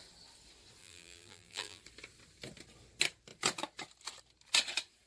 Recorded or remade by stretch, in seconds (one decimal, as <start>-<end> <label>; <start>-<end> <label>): 0.0-0.8 recorded; 0.8-1.8 remade; 1.8-5.1 recorded